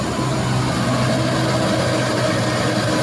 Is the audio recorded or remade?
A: recorded